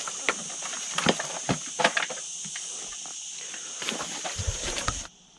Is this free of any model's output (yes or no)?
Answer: no